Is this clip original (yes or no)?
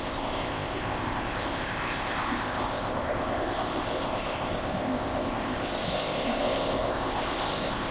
no